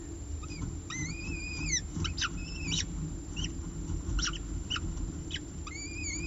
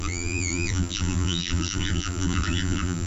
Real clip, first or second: first